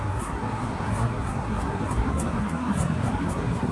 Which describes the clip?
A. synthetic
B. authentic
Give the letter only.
A